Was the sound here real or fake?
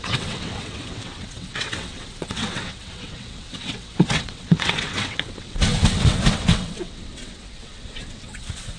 fake